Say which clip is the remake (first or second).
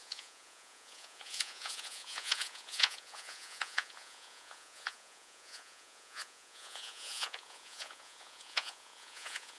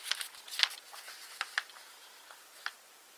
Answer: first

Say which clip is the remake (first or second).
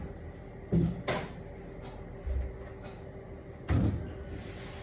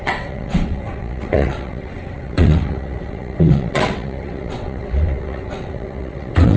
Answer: second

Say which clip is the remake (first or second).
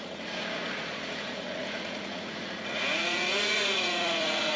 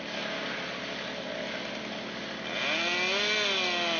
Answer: first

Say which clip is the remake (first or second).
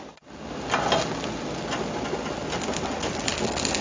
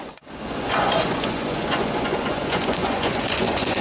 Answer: second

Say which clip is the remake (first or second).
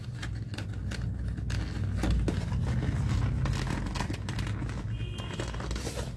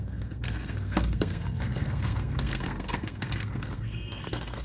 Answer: second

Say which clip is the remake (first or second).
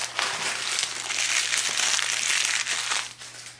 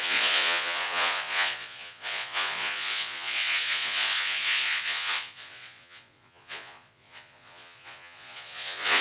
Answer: second